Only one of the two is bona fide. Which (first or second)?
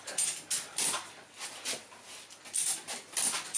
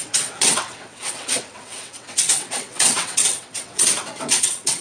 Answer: first